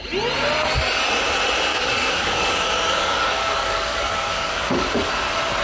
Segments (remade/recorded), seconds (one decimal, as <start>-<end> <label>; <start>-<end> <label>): 0.0-1.7 recorded; 1.7-5.1 remade; 5.1-5.6 recorded